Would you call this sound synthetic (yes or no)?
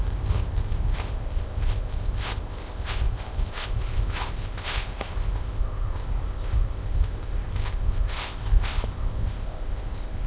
yes